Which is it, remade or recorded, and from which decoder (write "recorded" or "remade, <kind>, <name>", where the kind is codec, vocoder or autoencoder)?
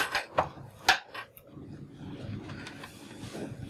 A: recorded